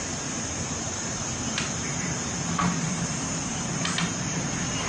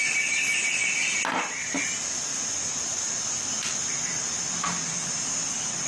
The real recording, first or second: second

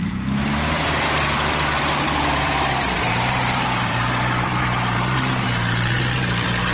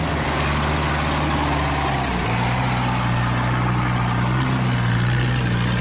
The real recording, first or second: second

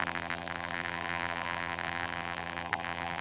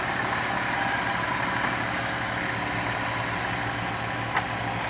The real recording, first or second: second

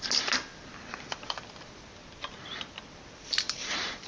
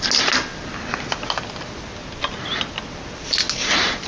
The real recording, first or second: second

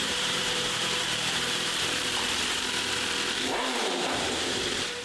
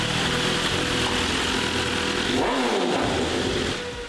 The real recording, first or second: second